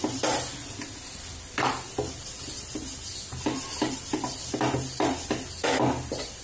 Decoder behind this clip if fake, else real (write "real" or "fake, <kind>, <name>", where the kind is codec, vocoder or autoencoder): real